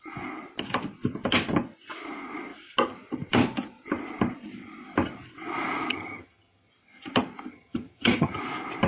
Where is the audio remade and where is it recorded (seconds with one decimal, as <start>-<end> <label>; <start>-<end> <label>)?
0.0-5.9 recorded; 5.9-6.7 remade; 6.7-7.5 recorded; 7.5-8.4 remade; 8.4-8.9 recorded